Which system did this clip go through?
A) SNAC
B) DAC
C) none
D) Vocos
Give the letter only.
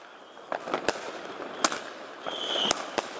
C